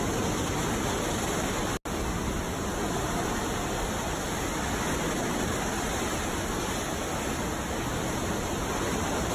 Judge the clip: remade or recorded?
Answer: recorded